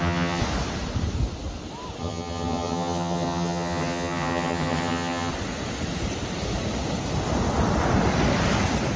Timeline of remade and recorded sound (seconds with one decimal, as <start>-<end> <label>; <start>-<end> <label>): 0.0-0.4 remade; 0.4-2.0 recorded; 2.0-5.3 remade; 5.3-9.0 recorded

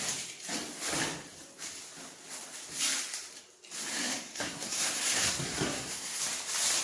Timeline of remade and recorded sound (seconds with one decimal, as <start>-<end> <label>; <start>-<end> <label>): 0.0-3.9 recorded; 3.9-6.2 remade; 6.2-6.8 recorded

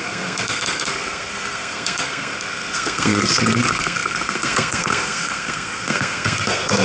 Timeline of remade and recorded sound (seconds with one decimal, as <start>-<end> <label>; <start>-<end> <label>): 0.0-6.8 remade

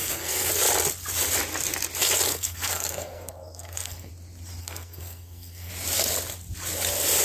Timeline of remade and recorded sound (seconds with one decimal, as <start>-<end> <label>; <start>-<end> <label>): 0.0-0.5 remade; 0.5-2.3 recorded; 2.3-4.1 remade; 4.1-4.6 recorded; 4.6-5.7 remade; 5.7-7.2 recorded

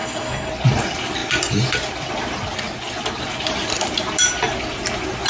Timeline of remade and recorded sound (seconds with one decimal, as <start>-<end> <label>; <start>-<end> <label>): 0.0-0.5 remade; 0.5-5.3 recorded